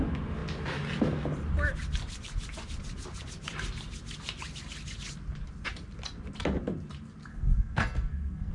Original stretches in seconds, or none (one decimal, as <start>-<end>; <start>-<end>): 0.0-7.3